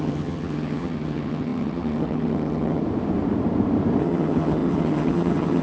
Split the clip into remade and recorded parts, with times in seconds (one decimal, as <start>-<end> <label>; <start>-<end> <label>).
0.0-2.8 remade; 2.8-4.0 recorded; 4.0-5.6 remade